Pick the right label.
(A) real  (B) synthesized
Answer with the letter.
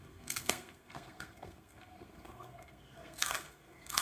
B